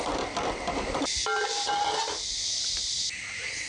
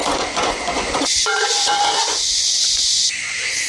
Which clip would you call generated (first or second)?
second